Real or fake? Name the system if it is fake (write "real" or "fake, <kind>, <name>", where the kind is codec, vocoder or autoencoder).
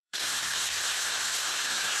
fake, codec, SNAC